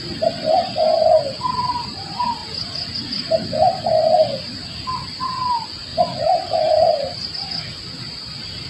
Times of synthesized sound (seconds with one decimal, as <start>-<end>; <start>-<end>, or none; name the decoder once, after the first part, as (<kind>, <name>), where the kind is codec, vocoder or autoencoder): 5.9-7.5 (vocoder, BigVGAN v2)